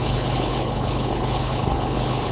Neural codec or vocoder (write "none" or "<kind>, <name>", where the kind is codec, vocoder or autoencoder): codec, HILCodec